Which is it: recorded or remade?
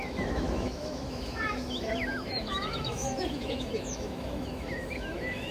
remade